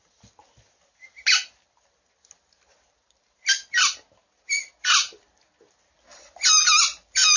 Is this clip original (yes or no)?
yes